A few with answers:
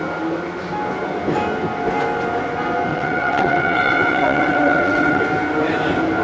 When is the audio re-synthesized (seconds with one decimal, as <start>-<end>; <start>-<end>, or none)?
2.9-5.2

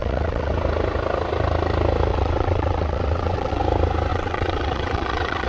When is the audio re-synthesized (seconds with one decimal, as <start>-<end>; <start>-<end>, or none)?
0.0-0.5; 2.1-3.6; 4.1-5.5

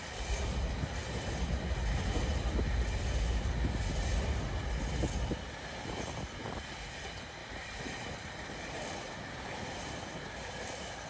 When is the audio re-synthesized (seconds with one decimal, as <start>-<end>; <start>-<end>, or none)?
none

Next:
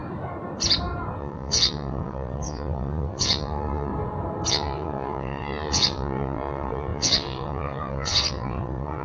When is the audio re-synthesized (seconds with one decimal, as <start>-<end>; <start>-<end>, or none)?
1.2-3.9; 4.5-9.0

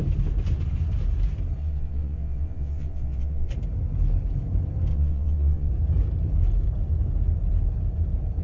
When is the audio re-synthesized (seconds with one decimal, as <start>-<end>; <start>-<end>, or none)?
1.6-3.5; 4.9-5.7

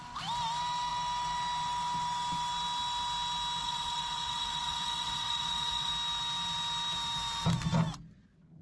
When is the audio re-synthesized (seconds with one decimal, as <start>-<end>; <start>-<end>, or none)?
3.6-5.9

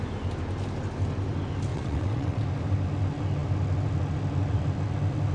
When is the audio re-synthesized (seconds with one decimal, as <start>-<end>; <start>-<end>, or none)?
1.7-2.4

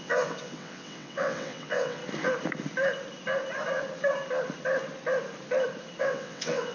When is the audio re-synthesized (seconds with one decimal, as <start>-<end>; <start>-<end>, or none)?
0.0-2.0; 6.0-6.7